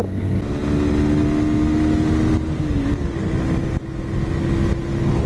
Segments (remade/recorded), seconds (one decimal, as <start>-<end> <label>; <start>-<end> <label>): 0.0-5.3 recorded